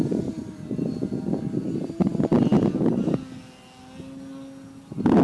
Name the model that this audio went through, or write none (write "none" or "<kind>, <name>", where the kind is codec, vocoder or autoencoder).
none